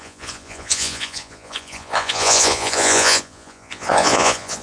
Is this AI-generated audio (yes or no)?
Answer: yes